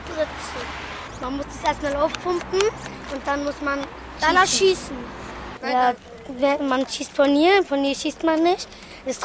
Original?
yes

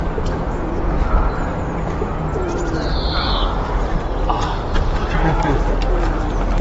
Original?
yes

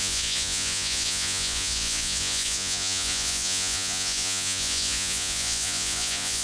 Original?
no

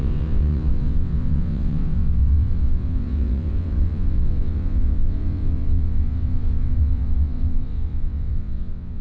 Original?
no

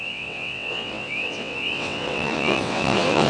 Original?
no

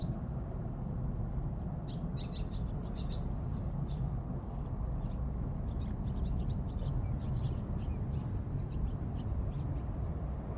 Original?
yes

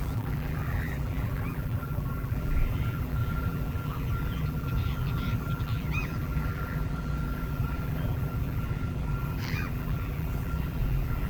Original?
no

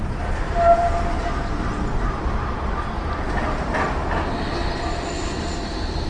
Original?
yes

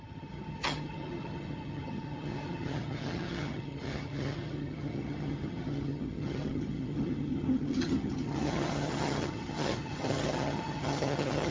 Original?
no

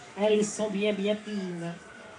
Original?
no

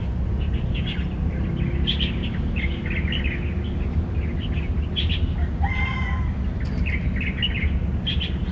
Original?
yes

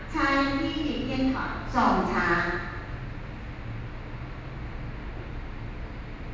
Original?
yes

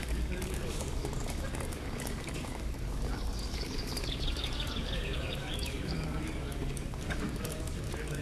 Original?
no